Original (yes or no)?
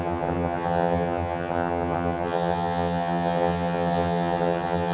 no